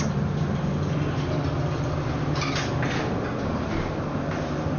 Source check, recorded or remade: recorded